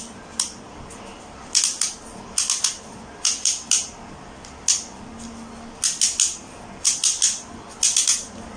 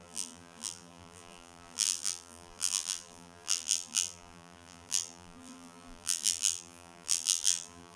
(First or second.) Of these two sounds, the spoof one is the second